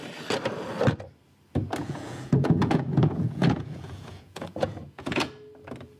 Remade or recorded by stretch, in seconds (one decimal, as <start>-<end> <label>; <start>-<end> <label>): 0.0-1.8 recorded; 1.8-5.3 remade; 5.3-6.0 recorded